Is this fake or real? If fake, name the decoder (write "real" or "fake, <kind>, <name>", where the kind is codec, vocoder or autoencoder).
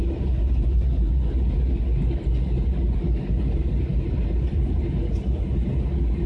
real